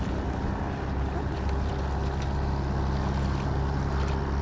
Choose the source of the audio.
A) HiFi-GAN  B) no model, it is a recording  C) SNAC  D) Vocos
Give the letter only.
B